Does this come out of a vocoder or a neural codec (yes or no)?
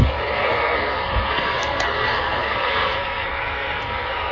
yes